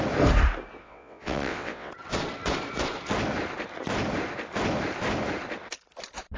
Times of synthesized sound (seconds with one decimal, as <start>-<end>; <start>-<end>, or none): 0.8-1.9